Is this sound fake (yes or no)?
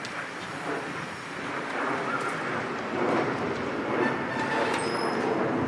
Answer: no